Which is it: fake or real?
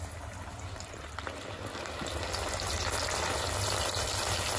real